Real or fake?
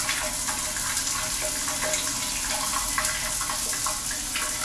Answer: real